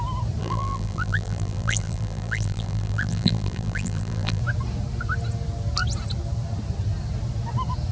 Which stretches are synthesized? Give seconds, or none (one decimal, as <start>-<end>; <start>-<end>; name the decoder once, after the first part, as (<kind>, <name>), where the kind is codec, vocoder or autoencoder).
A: 0.4-4.4 (vocoder, BigVGAN v2)